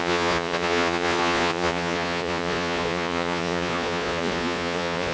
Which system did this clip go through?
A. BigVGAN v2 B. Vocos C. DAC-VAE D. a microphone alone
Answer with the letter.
B